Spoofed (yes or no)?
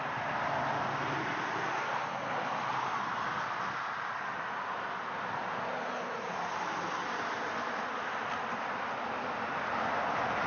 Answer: no